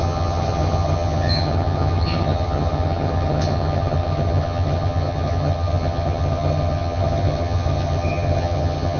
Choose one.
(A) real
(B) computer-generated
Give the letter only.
B